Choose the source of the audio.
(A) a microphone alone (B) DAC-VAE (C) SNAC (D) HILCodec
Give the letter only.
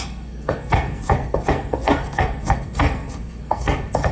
C